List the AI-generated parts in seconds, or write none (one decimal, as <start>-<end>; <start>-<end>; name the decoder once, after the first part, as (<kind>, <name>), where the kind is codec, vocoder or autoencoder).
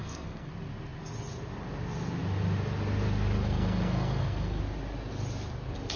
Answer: 0.0-0.5 (codec, SNAC); 3.4-4.6